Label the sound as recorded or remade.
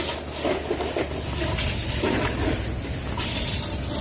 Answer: recorded